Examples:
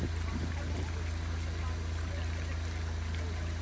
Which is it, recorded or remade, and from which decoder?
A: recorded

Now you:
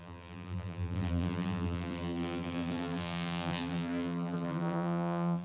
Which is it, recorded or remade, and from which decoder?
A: remade, vocoder, BigVGAN v2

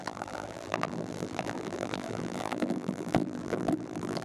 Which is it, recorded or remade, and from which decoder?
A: remade, vocoder, BigVGAN v2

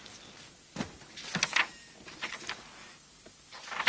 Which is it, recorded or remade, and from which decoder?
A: recorded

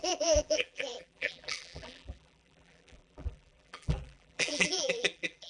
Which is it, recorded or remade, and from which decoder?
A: remade, vocoder, BigVGAN v2